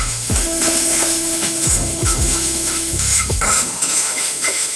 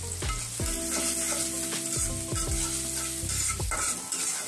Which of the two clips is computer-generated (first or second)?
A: first